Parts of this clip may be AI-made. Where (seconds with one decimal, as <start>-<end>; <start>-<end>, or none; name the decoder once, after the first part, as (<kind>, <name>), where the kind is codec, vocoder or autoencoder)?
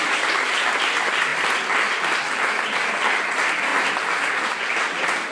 none